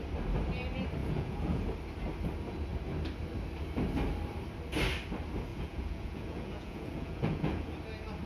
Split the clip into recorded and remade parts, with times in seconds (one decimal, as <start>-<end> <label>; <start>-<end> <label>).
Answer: 0.0-1.0 recorded; 1.0-1.6 remade; 1.6-5.5 recorded; 5.5-7.7 remade; 7.7-8.3 recorded